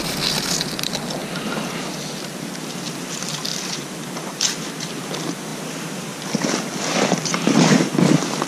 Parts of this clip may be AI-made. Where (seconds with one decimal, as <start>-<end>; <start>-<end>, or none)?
3.5-5.0